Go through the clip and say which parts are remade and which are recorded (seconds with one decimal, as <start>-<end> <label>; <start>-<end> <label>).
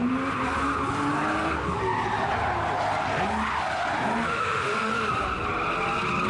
0.0-4.3 recorded; 4.3-4.9 remade; 4.9-6.3 recorded